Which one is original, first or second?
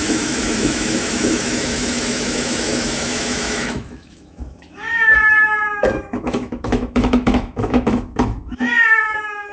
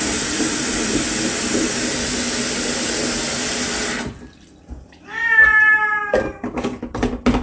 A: second